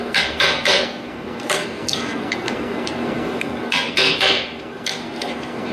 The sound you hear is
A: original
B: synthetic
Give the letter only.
B